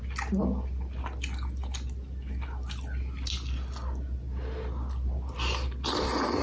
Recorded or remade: recorded